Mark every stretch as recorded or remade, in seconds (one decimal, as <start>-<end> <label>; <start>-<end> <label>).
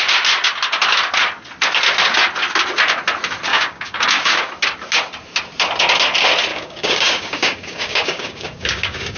0.0-3.5 recorded; 3.5-4.5 remade; 4.5-6.5 recorded; 6.5-9.2 remade